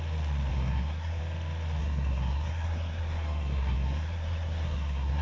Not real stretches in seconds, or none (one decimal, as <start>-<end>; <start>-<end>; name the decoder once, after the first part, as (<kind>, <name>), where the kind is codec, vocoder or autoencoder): 0.5-1.2 (codec, SNAC); 1.8-5.2